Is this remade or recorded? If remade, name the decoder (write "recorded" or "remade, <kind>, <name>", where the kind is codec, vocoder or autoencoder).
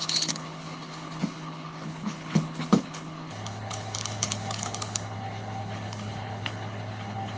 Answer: remade, codec, HILCodec